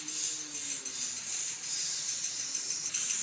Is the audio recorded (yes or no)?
yes